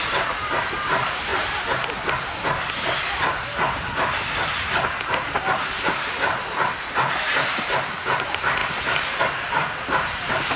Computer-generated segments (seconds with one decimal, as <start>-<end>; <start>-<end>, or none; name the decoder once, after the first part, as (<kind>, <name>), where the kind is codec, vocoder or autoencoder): 0.0-1.3 (vocoder, BigVGAN v2); 5.2-8.6; 9.2-10.6